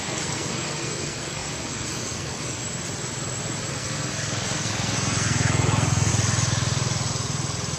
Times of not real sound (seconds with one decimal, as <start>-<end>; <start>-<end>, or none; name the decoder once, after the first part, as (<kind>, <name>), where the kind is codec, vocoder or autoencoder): 0.0-2.6 (codec, SNAC); 3.7-6.1